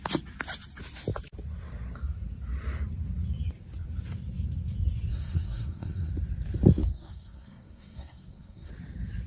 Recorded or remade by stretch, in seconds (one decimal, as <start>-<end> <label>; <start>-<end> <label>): 0.0-5.1 recorded; 5.1-6.1 remade; 6.1-6.9 recorded; 6.9-8.7 remade; 8.7-9.3 recorded